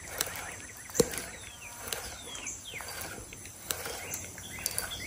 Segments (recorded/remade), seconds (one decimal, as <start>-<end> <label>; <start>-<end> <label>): 0.0-0.4 remade; 0.4-3.5 recorded; 3.5-5.1 remade

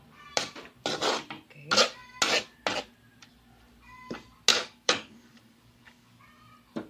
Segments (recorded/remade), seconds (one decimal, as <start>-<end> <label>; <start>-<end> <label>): 0.0-4.5 recorded; 4.5-6.2 remade; 6.2-6.9 recorded

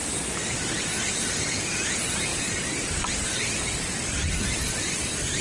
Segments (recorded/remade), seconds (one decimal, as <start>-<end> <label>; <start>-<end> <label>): 0.0-0.9 recorded; 0.9-2.3 remade; 2.3-4.3 recorded; 4.3-5.4 remade

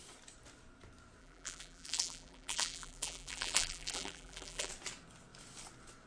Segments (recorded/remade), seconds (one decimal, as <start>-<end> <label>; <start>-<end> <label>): 0.0-1.2 recorded; 1.2-4.7 remade; 4.7-6.1 recorded

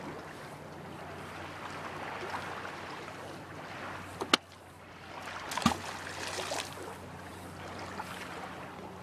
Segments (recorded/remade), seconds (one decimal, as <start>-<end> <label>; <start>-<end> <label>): 0.0-9.0 recorded

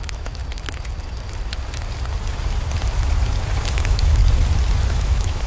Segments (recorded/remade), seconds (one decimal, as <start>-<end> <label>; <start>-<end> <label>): 0.0-0.4 remade; 0.4-3.7 recorded; 3.7-4.2 remade; 4.2-4.9 recorded; 4.9-5.5 remade

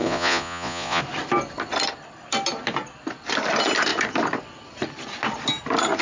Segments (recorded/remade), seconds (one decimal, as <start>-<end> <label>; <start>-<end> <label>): 0.0-1.0 remade; 1.0-6.0 recorded

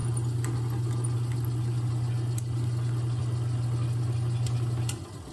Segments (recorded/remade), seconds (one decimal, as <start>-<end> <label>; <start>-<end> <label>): 0.0-5.3 recorded